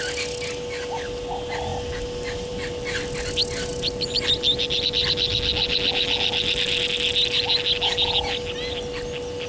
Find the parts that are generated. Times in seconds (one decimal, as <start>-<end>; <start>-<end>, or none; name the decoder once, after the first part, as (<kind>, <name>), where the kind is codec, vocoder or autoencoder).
none